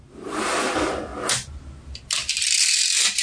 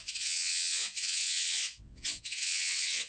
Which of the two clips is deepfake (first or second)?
second